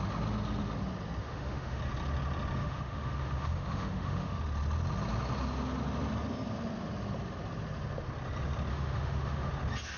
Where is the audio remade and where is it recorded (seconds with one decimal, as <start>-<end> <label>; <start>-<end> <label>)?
0.0-1.2 recorded; 1.2-1.8 remade; 1.8-2.6 recorded; 2.6-4.4 remade; 4.4-8.7 recorded; 8.7-9.5 remade; 9.5-10.0 recorded